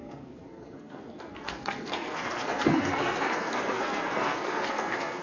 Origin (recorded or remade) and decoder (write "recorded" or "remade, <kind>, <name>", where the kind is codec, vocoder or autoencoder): remade, codec, SNAC